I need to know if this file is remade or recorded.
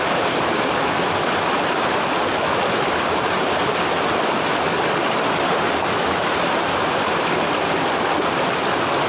recorded